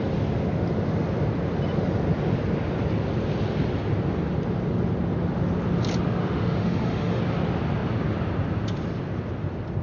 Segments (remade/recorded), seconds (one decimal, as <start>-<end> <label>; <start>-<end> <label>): 0.0-6.2 recorded; 6.2-7.2 remade; 7.2-9.8 recorded